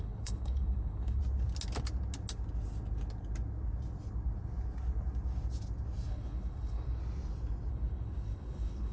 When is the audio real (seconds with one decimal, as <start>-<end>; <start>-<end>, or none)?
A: 1.2-6.1; 7.0-7.7